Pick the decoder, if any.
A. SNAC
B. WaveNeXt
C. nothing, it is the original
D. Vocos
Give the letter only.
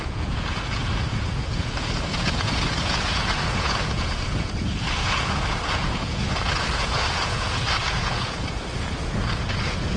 D